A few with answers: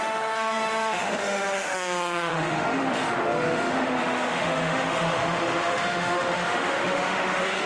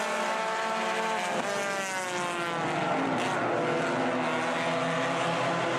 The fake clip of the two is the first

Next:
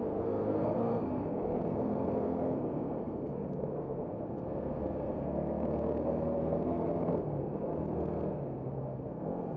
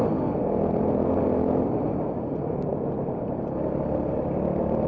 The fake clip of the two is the first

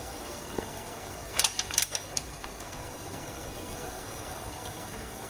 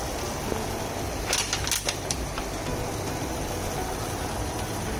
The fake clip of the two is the first